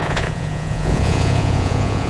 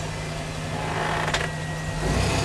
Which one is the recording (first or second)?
second